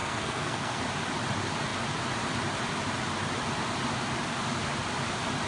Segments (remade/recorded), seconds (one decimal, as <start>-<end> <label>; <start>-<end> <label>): 0.0-0.8 remade; 0.8-5.5 recorded